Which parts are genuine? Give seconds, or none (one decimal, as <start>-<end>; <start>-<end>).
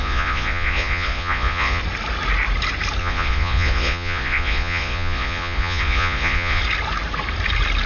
1.8-3.0; 6.6-7.9